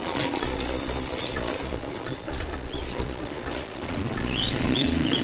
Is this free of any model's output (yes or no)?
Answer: no